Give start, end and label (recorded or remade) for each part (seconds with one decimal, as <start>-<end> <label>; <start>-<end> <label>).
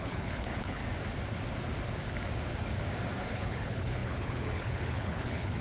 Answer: 0.0-0.8 remade; 0.8-3.2 recorded; 3.2-5.6 remade